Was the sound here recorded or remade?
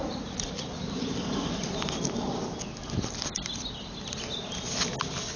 recorded